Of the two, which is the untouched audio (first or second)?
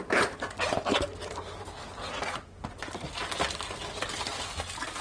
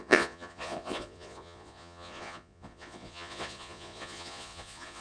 first